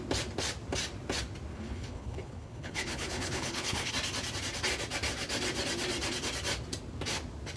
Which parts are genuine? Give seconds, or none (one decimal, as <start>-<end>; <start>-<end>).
0.0-1.5; 3.9-7.6